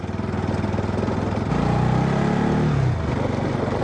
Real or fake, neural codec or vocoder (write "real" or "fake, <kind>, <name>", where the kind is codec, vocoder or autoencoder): real